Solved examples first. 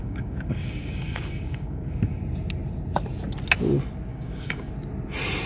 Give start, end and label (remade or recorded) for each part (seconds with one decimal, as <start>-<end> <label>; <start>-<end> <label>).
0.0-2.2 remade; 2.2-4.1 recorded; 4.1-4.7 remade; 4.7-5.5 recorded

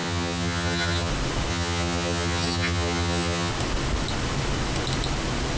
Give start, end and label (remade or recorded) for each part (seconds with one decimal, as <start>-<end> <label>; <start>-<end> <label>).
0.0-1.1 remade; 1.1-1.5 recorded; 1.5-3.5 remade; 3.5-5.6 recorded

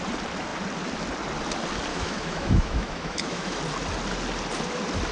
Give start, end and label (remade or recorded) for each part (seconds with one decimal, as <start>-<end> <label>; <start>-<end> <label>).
0.0-1.9 recorded; 1.9-3.6 remade; 3.6-5.1 recorded

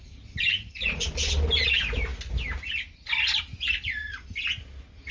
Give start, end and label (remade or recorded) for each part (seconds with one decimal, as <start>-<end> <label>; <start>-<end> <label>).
0.0-5.1 recorded

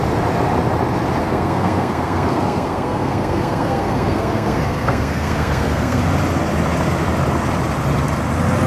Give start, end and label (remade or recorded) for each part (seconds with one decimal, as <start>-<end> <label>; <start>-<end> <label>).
0.0-1.2 recorded; 1.2-6.0 remade; 6.0-8.7 recorded

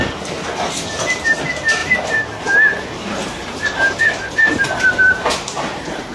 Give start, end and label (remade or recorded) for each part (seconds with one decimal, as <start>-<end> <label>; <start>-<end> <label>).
0.0-1.8 recorded; 1.8-5.1 remade; 5.1-6.1 recorded

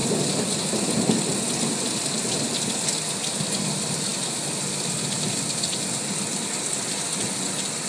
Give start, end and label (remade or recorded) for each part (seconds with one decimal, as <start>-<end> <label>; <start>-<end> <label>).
0.0-7.9 recorded